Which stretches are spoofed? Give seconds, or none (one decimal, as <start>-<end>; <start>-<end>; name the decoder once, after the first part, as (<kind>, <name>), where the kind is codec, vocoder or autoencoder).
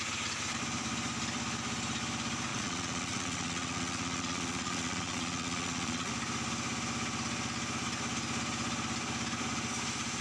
2.5-6.1 (vocoder, Vocos)